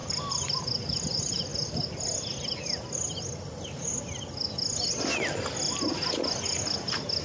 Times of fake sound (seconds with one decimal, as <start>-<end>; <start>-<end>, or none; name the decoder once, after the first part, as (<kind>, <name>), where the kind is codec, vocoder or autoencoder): none